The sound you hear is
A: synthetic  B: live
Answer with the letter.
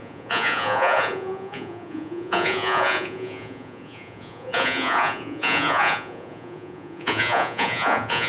A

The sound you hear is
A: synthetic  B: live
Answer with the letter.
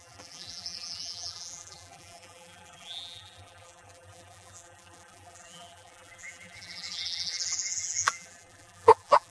A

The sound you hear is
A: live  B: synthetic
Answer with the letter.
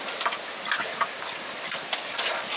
A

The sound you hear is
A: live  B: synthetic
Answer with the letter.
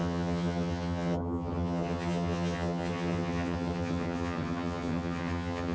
B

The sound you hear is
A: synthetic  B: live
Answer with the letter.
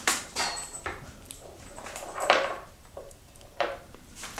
A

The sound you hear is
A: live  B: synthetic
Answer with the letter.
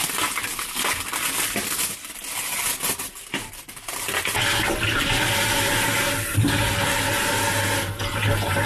A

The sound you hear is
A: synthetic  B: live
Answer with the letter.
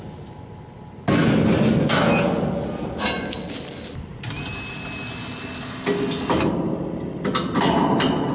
B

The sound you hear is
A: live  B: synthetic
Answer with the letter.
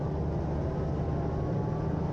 A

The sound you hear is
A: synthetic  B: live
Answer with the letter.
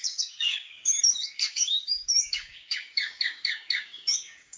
A